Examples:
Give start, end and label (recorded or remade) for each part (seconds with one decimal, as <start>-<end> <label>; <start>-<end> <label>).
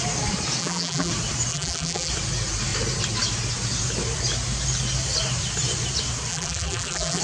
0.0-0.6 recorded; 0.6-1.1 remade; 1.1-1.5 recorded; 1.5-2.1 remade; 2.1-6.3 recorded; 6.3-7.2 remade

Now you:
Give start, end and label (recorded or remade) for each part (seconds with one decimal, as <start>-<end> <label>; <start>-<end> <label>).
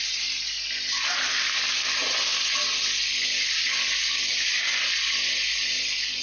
0.0-6.2 recorded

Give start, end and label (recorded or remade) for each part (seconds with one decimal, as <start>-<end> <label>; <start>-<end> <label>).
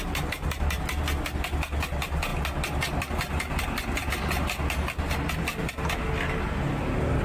0.0-7.2 recorded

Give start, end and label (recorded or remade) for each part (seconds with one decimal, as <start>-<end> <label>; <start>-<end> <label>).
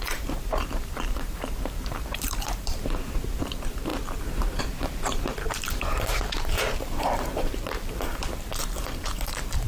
0.0-3.9 remade; 3.9-4.6 recorded; 4.6-9.7 remade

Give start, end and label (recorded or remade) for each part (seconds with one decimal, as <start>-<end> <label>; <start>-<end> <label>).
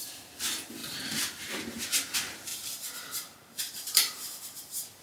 0.0-0.8 recorded; 0.8-1.6 remade; 1.6-2.5 recorded; 2.5-5.0 remade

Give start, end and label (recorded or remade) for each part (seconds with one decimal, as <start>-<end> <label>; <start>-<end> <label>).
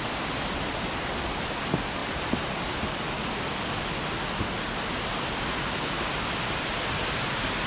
0.0-7.7 recorded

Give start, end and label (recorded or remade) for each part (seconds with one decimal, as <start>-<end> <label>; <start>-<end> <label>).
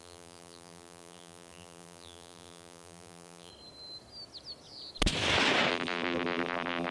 0.0-3.5 remade; 3.5-5.7 recorded; 5.7-6.9 remade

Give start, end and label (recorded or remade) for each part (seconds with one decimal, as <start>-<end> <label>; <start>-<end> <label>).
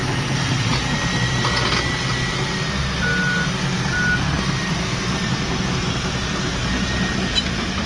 0.0-0.7 remade; 0.7-7.9 recorded